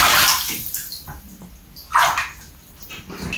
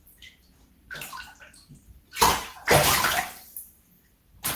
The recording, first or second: first